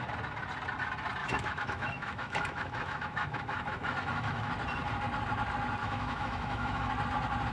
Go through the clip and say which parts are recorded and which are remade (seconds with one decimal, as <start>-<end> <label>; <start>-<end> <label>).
0.0-1.2 recorded; 1.2-4.5 remade; 4.5-5.8 recorded; 5.8-6.9 remade; 6.9-7.5 recorded